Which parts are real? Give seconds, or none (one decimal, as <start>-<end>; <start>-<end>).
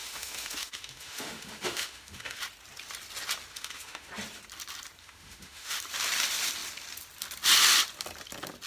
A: 2.4-3.5; 4.1-5.0; 5.8-8.7